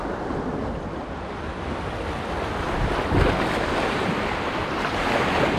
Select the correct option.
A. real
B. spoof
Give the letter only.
A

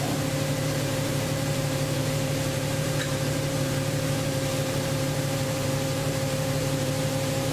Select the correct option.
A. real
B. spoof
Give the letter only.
B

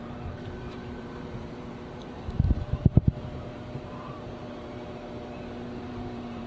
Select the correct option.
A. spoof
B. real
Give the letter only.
A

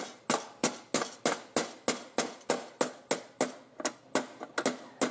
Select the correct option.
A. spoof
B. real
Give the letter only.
B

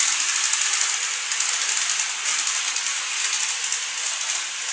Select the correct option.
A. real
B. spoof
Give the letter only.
A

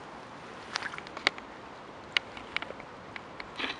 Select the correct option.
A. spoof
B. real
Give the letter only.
B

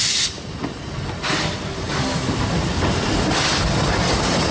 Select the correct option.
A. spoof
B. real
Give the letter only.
B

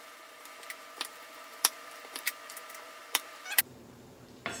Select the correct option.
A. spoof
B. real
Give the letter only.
A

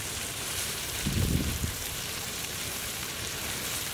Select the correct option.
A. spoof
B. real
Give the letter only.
A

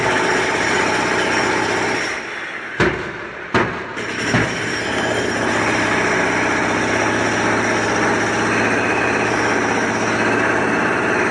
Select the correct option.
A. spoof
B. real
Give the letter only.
B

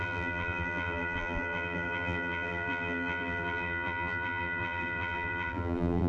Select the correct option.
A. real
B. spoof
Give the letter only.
B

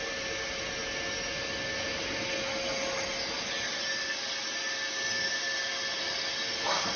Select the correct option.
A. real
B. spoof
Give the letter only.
A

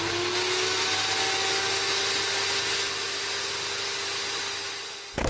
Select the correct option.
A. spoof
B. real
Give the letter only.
B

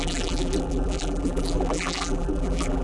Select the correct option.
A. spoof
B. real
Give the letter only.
A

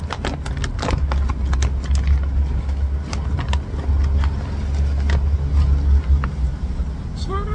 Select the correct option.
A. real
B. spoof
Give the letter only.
A